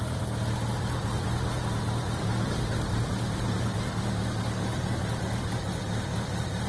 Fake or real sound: real